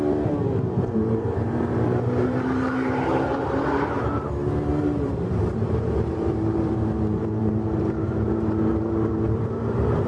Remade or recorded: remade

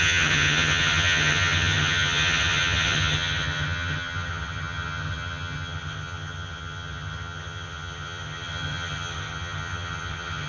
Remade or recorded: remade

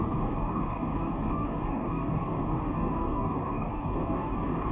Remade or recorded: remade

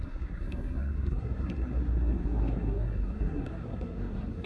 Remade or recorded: remade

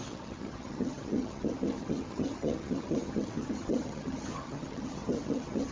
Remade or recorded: remade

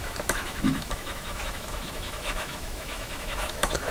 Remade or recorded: remade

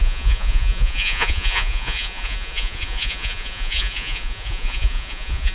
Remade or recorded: remade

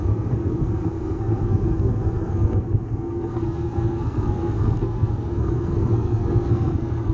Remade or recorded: remade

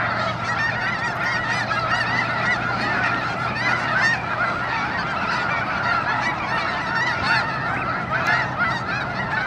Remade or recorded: recorded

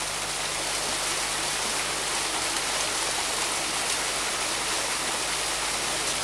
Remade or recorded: recorded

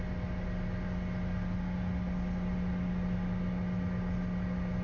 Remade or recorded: recorded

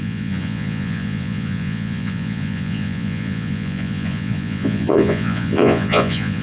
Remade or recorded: remade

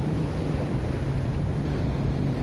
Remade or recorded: recorded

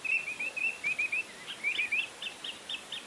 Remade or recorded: recorded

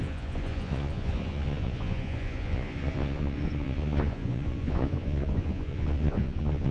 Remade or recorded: remade